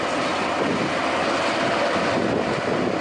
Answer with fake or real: real